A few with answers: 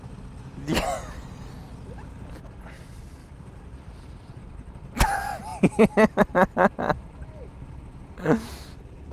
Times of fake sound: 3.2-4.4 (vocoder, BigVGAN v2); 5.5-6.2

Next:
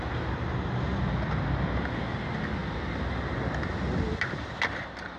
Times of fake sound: 2.6-5.2 (vocoder, BigVGAN v2)

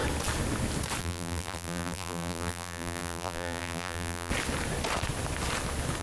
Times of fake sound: 1.0-4.3 (vocoder, BigVGAN v2)

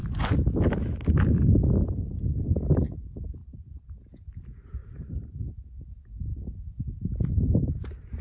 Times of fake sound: 3.4-4.0 (vocoder, BigVGAN v2); 4.8-5.4